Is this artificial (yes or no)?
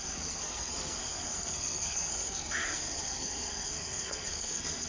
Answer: yes